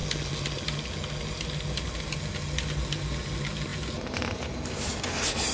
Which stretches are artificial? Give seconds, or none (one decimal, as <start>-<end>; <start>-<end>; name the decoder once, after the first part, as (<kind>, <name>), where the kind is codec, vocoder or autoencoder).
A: none